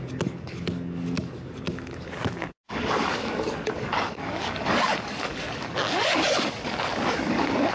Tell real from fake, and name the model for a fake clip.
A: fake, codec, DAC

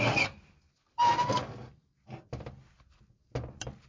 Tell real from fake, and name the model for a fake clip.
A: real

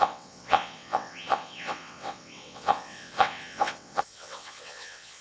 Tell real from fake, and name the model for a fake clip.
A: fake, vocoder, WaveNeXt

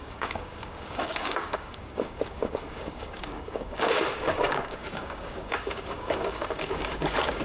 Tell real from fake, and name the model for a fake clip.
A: fake, codec, DAC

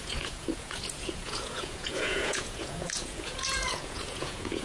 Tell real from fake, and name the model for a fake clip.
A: fake, vocoder, Vocos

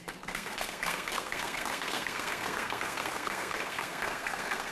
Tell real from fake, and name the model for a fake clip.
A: fake, codec, SNAC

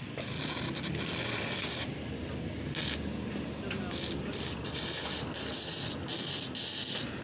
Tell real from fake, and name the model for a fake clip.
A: real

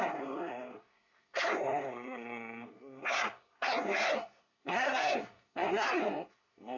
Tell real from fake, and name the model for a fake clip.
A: fake, codec, SNAC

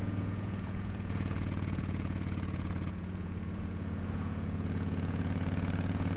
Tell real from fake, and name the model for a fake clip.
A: fake, vocoder, Vocos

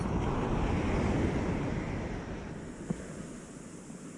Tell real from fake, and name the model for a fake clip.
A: real